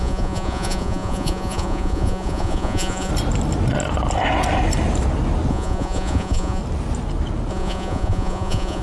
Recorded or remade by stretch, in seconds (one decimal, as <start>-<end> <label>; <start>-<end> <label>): 0.0-3.1 remade; 3.1-5.5 recorded; 5.5-6.6 remade; 6.6-7.5 recorded; 7.5-8.8 remade